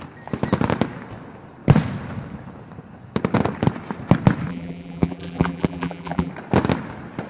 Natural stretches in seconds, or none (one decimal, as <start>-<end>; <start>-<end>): 0.0-4.5; 6.3-7.3